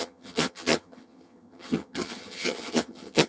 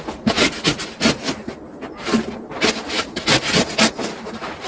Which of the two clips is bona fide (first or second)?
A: second